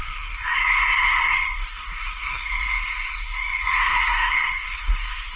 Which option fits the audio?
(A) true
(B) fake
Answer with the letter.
B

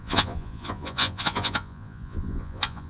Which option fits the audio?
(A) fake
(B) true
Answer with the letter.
A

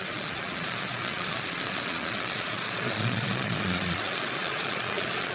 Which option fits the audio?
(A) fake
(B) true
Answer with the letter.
A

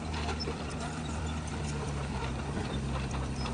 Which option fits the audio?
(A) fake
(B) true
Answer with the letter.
A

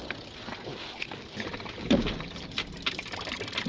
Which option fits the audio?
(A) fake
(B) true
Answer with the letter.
B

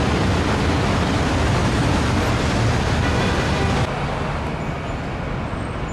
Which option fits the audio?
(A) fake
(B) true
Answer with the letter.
B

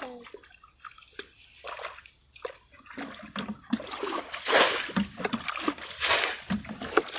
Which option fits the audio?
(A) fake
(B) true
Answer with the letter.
B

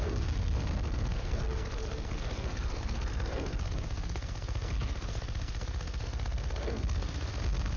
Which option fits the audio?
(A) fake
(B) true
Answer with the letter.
A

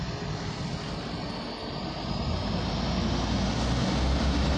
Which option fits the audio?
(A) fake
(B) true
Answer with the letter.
B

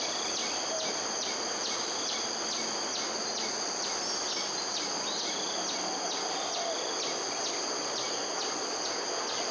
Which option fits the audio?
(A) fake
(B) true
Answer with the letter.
B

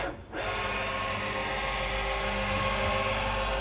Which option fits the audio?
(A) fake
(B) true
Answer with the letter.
B